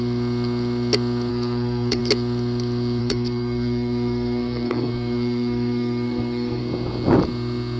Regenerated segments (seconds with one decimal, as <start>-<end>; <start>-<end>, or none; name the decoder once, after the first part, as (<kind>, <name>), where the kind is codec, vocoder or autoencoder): 1.3-2.0 (codec, SNAC); 3.0-6.6